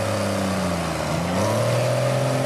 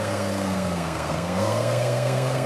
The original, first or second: first